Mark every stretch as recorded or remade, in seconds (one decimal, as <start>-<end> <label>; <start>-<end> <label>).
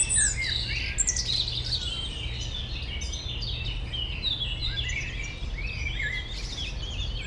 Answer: 0.0-7.3 recorded